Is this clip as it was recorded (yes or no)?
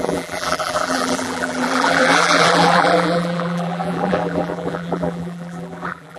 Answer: no